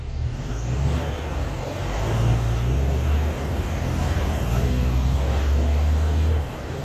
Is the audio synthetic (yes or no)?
yes